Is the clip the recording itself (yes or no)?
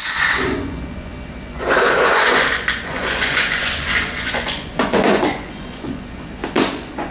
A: no